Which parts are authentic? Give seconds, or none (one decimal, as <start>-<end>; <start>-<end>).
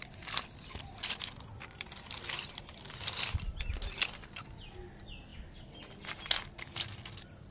0.0-0.9; 2.6-5.3; 5.9-7.5